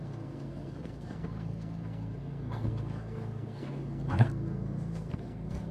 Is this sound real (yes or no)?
no